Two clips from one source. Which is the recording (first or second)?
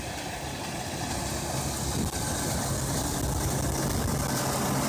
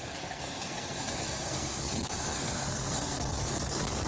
first